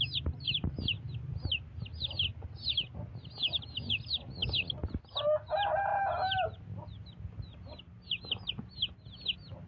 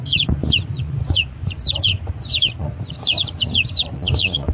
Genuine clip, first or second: first